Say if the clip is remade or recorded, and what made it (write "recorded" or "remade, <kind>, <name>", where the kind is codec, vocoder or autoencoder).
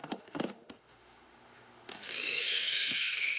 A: remade, autoencoder, DAC-VAE